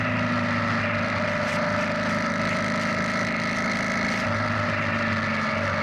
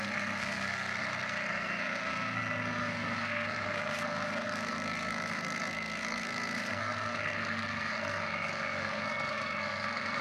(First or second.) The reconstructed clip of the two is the second